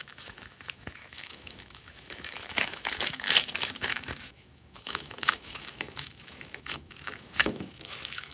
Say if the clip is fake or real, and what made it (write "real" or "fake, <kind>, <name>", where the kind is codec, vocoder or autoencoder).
fake, autoencoder, DAC-VAE